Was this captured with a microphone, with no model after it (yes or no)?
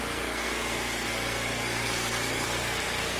no